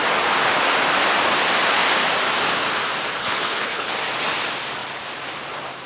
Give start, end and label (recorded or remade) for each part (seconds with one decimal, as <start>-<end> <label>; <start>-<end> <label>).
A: 0.0-3.2 recorded; 3.2-3.9 remade; 3.9-5.9 recorded